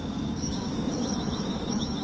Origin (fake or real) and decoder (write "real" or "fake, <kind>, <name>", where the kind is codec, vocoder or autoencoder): fake, codec, DAC